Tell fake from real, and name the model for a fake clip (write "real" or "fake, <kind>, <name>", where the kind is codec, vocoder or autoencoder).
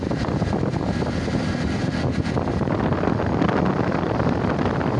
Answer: real